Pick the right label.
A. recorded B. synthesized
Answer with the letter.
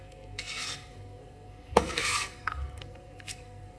B